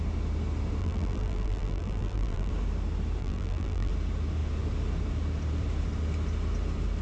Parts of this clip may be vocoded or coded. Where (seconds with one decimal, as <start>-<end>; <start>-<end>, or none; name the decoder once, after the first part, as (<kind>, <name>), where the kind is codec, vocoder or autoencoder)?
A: 0.8-2.5 (vocoder, BigVGAN v2); 3.2-3.9